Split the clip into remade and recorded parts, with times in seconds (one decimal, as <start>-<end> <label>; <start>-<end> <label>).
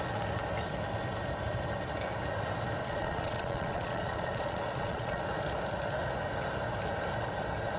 0.0-2.8 recorded; 2.8-5.2 remade; 5.2-7.8 recorded